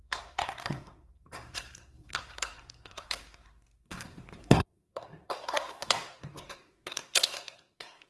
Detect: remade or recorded remade